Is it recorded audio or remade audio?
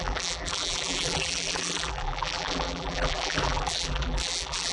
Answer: remade